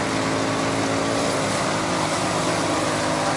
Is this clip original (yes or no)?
yes